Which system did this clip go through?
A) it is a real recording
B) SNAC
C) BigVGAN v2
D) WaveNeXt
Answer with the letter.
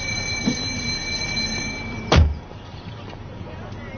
C